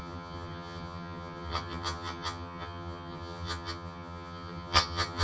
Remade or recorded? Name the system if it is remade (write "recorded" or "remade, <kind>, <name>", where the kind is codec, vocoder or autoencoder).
remade, vocoder, HiFi-GAN